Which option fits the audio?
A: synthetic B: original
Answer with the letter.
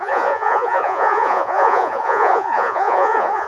A